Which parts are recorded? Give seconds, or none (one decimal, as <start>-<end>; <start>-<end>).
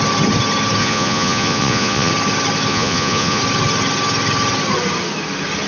0.0-0.8; 2.1-2.7; 3.4-5.7